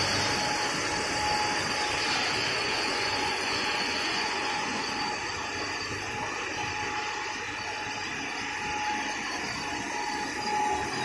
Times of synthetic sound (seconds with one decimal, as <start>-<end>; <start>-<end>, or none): 2.6-4.9